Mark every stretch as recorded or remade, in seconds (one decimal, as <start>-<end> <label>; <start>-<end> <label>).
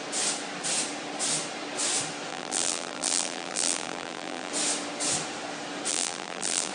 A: 0.0-2.3 recorded; 2.3-4.5 remade; 4.5-5.9 recorded; 5.9-6.7 remade